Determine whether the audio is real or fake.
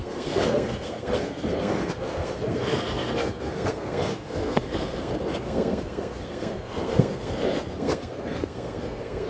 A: fake